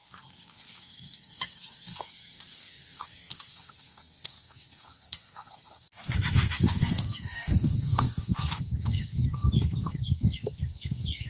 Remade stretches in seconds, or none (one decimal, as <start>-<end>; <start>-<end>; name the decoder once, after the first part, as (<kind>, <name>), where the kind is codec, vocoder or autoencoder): 0.0-11.3 (codec, SNAC)